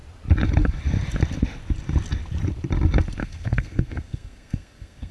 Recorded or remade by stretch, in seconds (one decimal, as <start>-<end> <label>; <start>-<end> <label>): 0.0-3.2 recorded; 3.2-5.1 remade